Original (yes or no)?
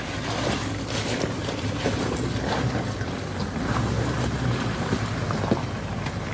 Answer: yes